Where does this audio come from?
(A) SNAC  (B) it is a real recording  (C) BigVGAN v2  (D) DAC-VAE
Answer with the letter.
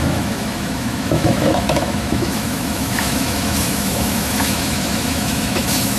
D